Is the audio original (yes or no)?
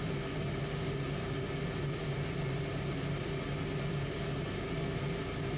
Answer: yes